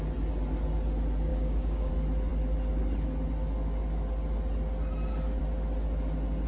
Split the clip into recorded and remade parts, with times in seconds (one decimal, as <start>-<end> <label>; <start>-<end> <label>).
0.0-1.3 recorded; 1.3-1.9 remade; 1.9-6.5 recorded